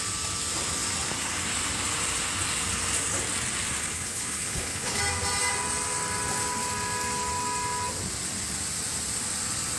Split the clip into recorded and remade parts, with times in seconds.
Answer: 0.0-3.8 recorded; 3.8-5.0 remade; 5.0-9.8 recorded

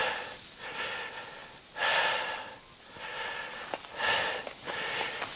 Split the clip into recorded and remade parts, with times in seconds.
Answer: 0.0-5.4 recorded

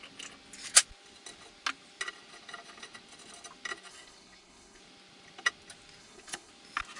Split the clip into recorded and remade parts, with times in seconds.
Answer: 0.0-3.9 recorded; 3.9-4.8 remade; 4.8-6.0 recorded; 6.0-6.5 remade; 6.5-7.0 recorded

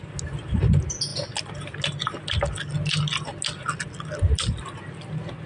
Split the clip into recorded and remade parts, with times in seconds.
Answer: 0.0-5.5 recorded